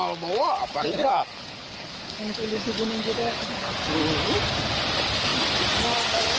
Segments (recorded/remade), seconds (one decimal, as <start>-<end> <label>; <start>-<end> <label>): 0.0-0.8 recorded; 0.8-3.7 remade; 3.7-6.4 recorded